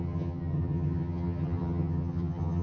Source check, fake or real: fake